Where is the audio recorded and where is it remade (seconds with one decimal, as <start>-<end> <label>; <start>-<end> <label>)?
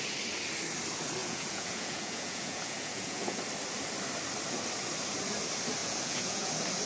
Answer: 0.0-1.2 recorded; 1.2-3.4 remade; 3.4-5.8 recorded; 5.8-6.5 remade; 6.5-6.9 recorded